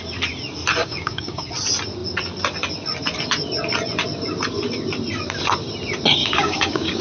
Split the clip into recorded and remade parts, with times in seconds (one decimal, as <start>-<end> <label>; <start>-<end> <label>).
0.0-0.8 recorded; 0.8-1.5 remade; 1.5-6.2 recorded; 6.2-7.0 remade